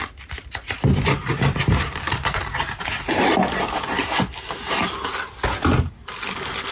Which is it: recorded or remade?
recorded